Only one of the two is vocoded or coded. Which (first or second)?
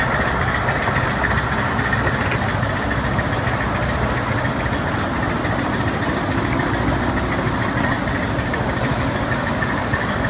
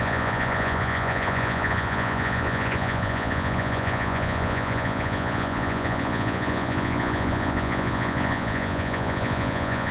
second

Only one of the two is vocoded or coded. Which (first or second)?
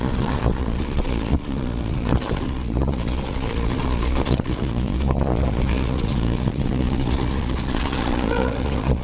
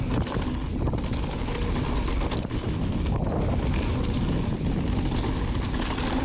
first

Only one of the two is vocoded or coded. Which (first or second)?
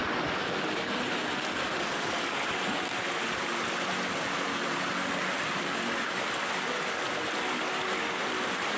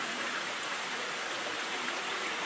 second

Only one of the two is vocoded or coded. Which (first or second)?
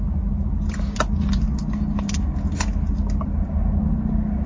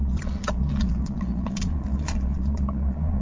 second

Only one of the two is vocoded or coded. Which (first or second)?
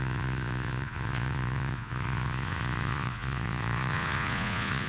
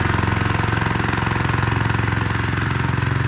first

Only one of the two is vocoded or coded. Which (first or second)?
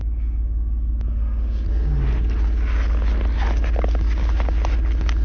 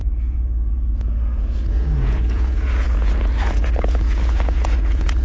second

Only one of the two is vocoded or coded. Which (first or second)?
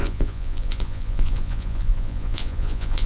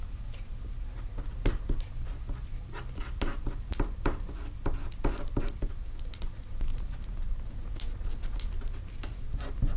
first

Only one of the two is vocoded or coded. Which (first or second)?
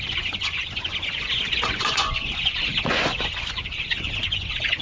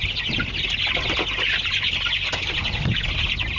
first